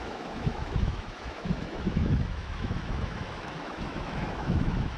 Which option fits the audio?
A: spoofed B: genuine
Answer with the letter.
A